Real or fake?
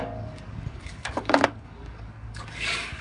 fake